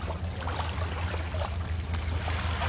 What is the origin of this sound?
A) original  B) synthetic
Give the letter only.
A